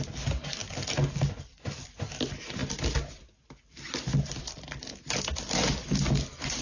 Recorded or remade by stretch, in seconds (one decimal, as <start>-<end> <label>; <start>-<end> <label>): 0.0-6.6 recorded

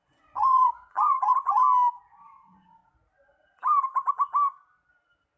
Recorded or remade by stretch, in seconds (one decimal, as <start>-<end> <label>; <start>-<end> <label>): 0.0-1.6 remade; 1.6-2.2 recorded; 2.2-2.8 remade; 2.8-5.4 recorded

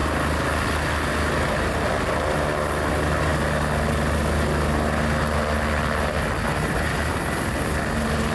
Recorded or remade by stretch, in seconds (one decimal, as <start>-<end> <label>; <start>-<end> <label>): 0.0-8.3 recorded